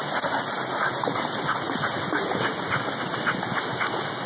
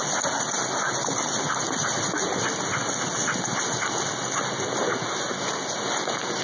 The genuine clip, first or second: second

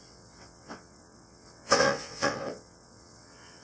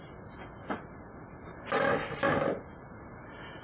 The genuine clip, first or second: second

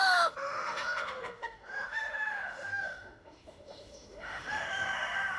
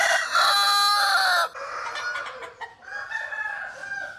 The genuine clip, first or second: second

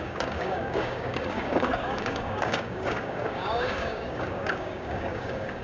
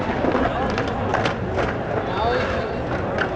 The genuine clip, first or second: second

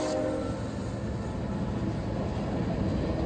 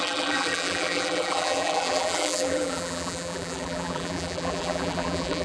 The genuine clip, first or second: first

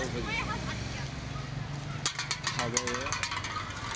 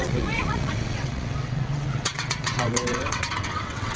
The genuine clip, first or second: first